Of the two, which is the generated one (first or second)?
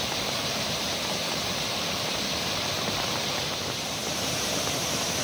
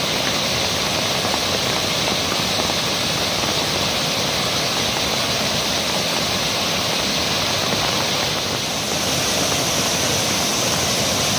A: first